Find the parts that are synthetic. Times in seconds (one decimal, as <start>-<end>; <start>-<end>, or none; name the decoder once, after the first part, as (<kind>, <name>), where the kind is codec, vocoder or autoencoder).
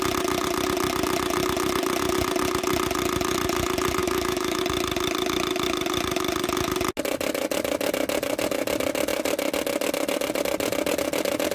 4.0-4.6 (autoencoder, DAC-VAE)